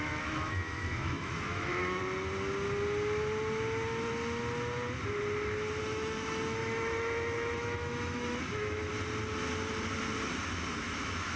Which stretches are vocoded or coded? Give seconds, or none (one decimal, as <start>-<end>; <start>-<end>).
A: 0.0-2.0; 5.8-8.9; 10.8-11.4